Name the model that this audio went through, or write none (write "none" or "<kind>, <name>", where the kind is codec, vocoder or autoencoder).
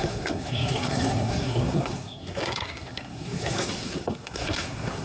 codec, SNAC